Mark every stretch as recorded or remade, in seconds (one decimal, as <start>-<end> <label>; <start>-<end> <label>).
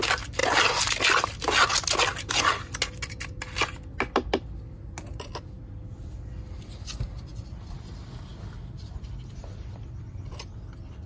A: 0.0-11.1 recorded